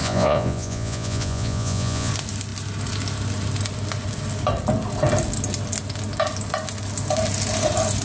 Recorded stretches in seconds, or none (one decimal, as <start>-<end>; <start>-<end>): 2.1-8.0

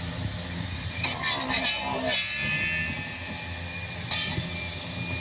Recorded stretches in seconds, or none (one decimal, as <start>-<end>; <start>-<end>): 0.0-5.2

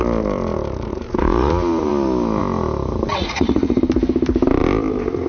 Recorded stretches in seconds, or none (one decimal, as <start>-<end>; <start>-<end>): 0.0-0.9; 1.5-3.1; 3.8-5.3

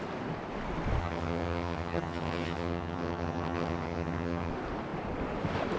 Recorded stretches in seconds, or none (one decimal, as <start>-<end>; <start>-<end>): 0.0-1.0; 4.5-5.8

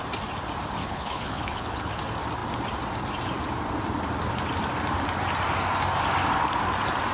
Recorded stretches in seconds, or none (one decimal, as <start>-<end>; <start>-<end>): 0.0-0.8; 1.9-7.1

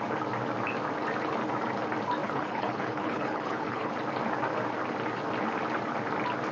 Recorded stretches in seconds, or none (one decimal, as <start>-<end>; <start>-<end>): 0.0-2.2; 3.9-6.5

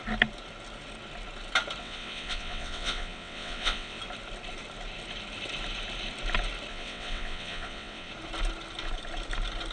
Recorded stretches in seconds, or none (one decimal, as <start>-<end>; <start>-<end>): 0.0-1.8; 4.0-6.7; 8.1-9.7

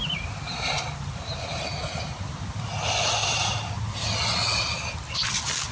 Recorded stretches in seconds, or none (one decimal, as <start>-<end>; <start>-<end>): 0.7-3.2; 3.8-5.7